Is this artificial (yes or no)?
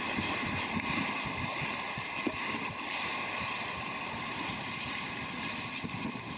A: no